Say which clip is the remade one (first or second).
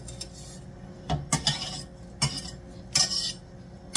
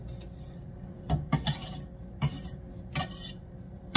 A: second